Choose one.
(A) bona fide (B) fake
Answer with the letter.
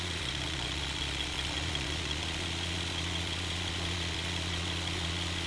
B